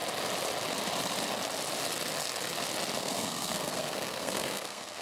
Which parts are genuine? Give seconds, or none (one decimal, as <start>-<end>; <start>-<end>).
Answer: 0.0-3.0